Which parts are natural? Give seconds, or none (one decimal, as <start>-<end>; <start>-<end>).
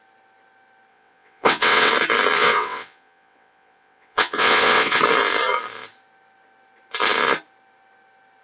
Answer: 0.0-0.9; 1.9-2.4; 5.0-8.4